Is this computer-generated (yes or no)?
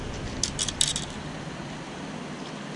no